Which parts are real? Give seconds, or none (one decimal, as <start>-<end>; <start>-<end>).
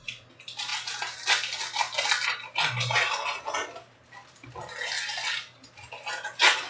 0.0-6.7